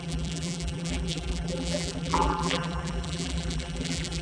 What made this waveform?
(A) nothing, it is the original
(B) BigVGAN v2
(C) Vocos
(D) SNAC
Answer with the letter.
B